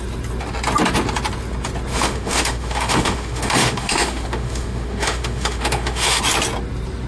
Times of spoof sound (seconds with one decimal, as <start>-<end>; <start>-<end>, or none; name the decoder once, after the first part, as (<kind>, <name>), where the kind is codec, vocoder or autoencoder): 1.9-6.2 (autoencoder, DAC-VAE)